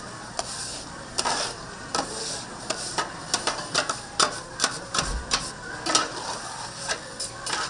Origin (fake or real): fake